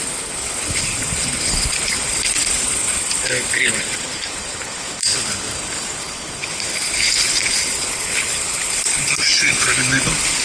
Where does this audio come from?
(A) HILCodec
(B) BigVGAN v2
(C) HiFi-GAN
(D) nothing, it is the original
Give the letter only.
A